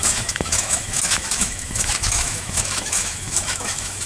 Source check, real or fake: fake